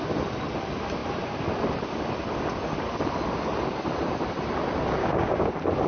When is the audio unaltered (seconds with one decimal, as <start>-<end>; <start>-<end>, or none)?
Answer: 0.0-5.0; 5.5-5.9